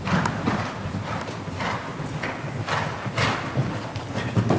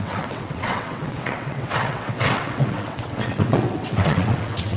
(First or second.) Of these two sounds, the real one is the first